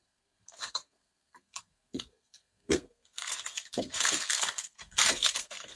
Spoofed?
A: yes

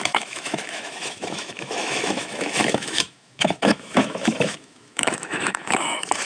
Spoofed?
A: yes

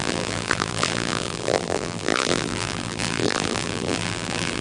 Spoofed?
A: yes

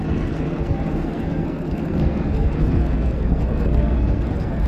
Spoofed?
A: yes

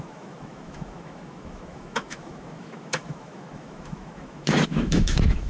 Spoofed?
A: yes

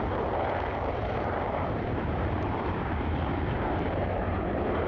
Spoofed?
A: yes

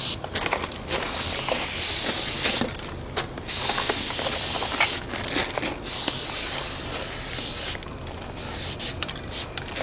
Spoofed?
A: no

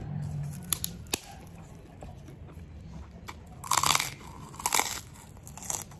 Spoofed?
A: no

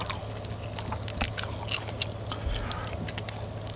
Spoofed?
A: no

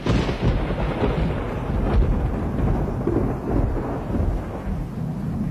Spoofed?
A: no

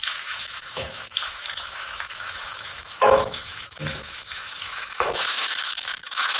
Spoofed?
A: yes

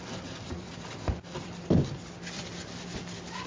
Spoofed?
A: yes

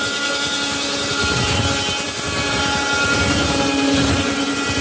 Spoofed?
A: no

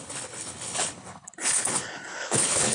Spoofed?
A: yes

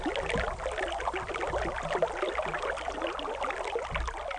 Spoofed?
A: no